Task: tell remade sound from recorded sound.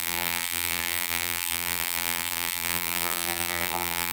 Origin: remade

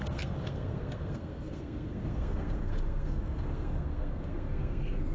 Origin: remade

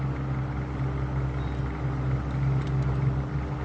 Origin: recorded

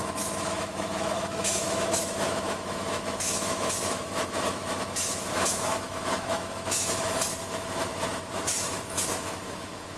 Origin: remade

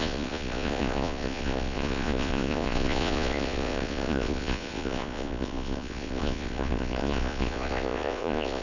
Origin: remade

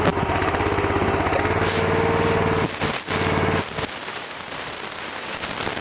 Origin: recorded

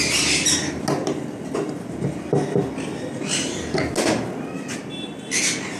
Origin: recorded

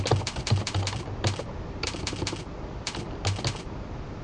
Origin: recorded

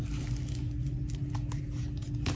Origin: recorded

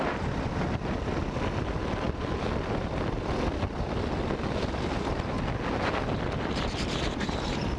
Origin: recorded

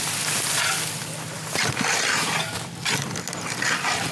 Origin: recorded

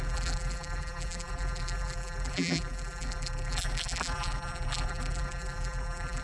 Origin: remade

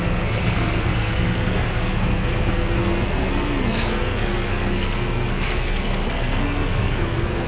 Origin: remade